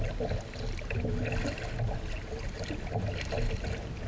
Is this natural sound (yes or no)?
yes